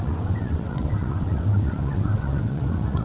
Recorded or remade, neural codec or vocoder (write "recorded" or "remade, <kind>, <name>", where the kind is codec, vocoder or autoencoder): remade, vocoder, WaveNeXt